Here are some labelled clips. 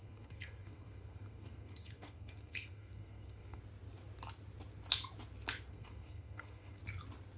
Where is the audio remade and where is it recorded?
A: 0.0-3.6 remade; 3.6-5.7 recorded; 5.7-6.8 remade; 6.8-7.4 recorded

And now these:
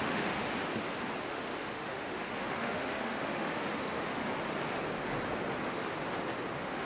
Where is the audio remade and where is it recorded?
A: 0.0-0.4 remade; 0.4-1.2 recorded; 1.2-4.2 remade; 4.2-6.5 recorded; 6.5-6.9 remade

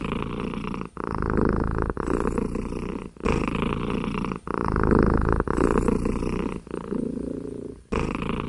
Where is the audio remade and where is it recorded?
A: 0.0-8.5 recorded